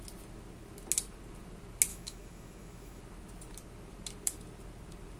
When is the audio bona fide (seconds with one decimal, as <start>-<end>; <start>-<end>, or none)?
0.0-1.9; 3.0-5.2